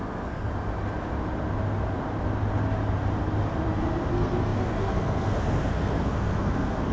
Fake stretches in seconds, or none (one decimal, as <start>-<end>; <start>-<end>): 0.0-0.5; 4.1-6.9